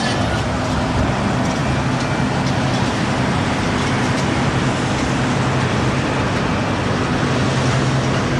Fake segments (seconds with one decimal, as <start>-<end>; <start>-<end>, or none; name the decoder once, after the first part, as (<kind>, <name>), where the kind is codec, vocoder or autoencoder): none